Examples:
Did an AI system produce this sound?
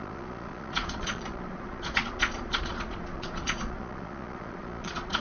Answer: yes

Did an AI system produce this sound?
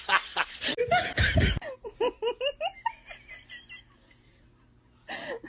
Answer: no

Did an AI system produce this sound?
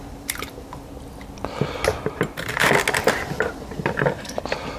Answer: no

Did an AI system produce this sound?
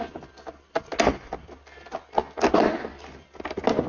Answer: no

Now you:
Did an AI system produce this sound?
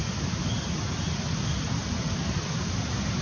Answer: no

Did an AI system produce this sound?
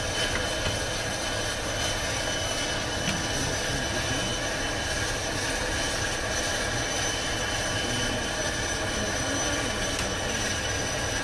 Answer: no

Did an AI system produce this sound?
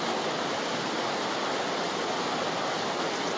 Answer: no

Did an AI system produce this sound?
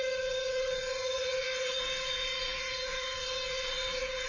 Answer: yes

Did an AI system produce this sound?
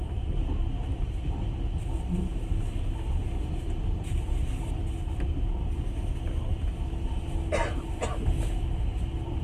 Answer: no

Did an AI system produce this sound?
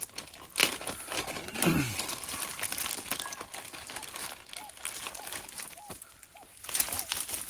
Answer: no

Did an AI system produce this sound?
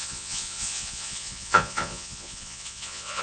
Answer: yes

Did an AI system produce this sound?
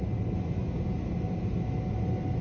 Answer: no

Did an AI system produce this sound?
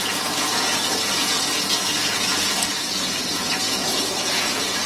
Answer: yes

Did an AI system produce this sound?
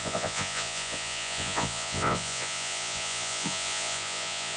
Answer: yes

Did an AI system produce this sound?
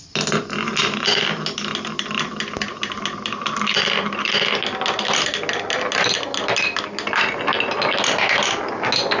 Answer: no